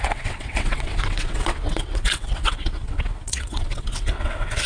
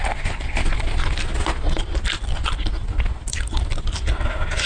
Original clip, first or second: second